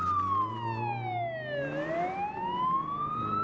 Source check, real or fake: real